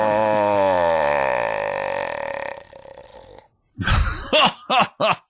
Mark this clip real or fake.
real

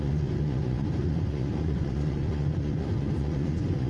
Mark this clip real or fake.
fake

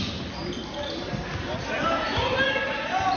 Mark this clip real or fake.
real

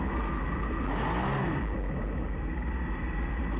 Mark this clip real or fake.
real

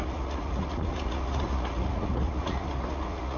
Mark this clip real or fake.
fake